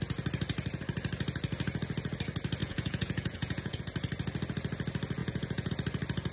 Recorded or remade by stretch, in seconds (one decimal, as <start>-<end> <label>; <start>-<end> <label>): 0.0-2.6 recorded; 2.6-3.8 remade; 3.8-5.2 recorded; 5.2-5.7 remade; 5.7-6.3 recorded